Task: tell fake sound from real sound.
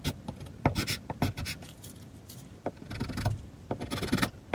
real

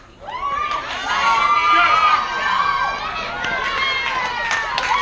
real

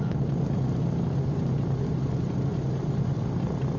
real